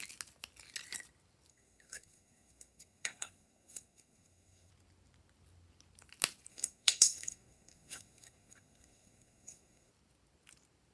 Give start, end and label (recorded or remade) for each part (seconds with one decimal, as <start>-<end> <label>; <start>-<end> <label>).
0.0-1.5 recorded; 1.5-4.7 remade; 4.7-6.5 recorded; 6.5-9.9 remade; 9.9-10.9 recorded